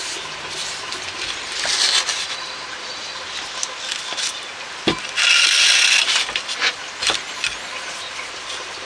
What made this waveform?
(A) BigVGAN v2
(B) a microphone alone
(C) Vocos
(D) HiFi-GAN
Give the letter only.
B